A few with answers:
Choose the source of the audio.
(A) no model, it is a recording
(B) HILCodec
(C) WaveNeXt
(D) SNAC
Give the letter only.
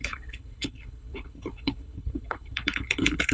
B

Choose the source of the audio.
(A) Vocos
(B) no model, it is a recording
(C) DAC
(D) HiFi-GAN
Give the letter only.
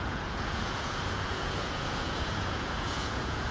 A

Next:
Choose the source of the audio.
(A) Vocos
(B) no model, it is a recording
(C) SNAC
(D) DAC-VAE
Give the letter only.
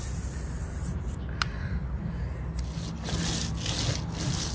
B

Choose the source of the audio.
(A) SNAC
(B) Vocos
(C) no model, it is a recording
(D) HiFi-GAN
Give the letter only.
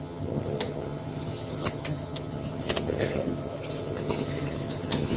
D